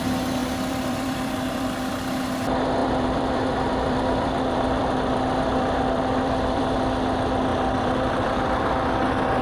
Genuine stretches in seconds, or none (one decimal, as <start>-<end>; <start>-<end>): 0.0-0.4; 1.9-2.8; 6.6-7.5; 8.4-9.4